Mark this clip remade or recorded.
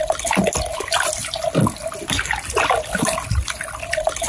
recorded